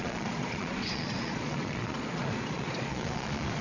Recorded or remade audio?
remade